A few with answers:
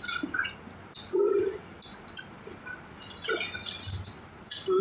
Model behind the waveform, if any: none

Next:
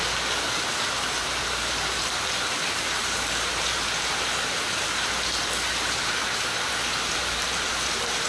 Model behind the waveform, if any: vocoder, BigVGAN v2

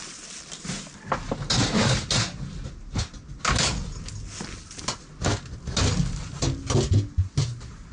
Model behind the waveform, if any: none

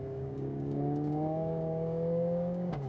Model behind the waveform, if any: codec, DAC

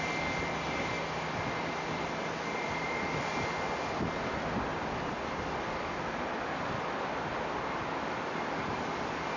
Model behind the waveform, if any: none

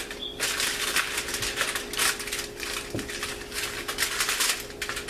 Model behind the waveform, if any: none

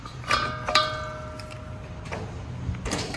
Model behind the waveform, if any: none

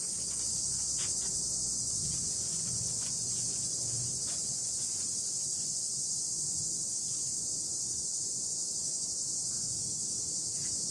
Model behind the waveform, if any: vocoder, Vocos